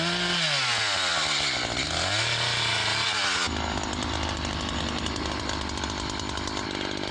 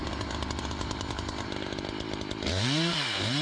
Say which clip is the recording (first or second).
first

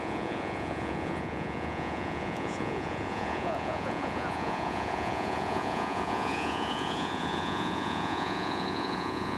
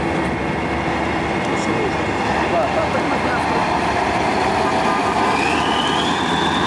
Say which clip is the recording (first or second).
second